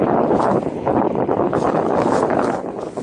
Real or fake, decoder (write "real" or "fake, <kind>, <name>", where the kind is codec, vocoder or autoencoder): fake, codec, HILCodec